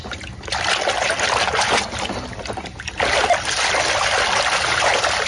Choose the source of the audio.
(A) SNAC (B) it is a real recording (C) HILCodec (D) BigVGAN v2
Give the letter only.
B